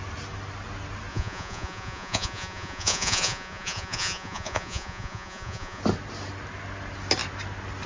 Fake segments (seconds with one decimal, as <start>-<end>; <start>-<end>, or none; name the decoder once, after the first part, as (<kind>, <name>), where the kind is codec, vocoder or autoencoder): 1.1-5.8 (vocoder, Vocos)